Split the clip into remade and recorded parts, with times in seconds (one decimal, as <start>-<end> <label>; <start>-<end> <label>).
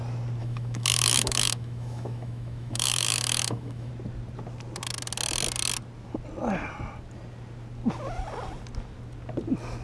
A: 0.0-0.4 recorded; 0.4-3.9 remade; 3.9-9.8 recorded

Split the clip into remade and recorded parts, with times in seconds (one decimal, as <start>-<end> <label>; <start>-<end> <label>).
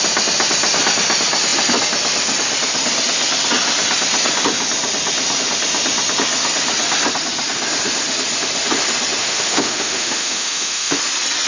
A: 0.0-9.2 recorded; 9.2-11.0 remade; 11.0-11.5 recorded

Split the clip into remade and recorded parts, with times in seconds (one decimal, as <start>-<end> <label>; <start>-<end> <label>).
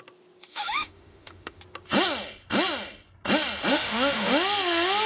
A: 0.0-0.5 recorded; 0.5-1.6 remade; 1.6-3.7 recorded; 3.7-4.3 remade; 4.3-5.1 recorded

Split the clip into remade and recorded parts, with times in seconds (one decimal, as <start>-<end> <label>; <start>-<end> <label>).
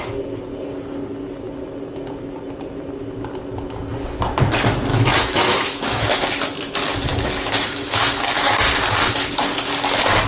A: 0.0-4.9 recorded; 4.9-6.3 remade; 6.3-7.1 recorded; 7.1-8.6 remade; 8.6-10.3 recorded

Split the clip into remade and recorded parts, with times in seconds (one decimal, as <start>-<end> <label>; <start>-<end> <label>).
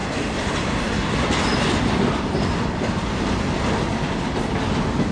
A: 0.0-5.1 recorded